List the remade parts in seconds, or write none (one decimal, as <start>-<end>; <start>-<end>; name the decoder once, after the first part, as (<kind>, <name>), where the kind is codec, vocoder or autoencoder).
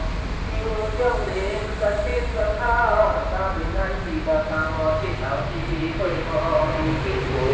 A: none